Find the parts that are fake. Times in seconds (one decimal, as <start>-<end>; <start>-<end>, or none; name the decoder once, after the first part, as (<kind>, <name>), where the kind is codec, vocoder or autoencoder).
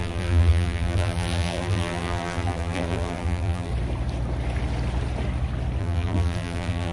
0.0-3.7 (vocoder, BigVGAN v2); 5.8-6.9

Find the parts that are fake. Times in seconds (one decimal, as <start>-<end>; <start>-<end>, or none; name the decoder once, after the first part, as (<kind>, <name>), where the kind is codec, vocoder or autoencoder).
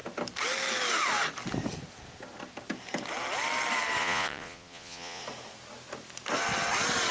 4.0-5.2 (vocoder, Vocos)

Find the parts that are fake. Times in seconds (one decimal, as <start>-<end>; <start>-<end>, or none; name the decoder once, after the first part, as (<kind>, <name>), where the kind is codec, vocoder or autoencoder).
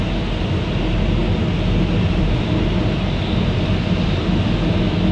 none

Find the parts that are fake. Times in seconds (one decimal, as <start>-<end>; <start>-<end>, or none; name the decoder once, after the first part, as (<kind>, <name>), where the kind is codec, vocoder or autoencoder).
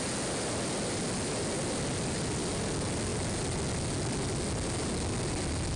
none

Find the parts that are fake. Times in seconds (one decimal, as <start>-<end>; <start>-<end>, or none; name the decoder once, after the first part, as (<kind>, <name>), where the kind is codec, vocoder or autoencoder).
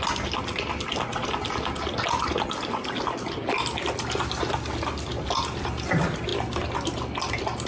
none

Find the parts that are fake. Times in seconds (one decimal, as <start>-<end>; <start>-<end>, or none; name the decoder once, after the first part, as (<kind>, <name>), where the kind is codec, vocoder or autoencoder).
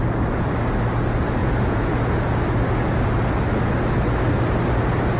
1.4-2.3 (vocoder, Vocos)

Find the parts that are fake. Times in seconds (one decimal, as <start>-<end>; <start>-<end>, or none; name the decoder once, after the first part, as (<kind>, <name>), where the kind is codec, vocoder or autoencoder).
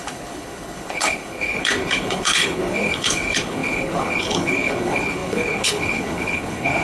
0.0-6.8 (codec, HILCodec)